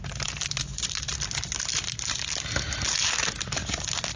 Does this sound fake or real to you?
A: real